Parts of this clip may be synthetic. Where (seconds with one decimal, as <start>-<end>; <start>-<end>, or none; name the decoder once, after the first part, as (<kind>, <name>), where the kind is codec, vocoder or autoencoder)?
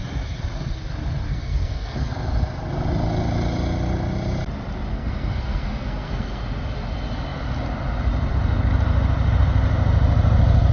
1.3-2.1 (codec, SNAC); 4.9-6.4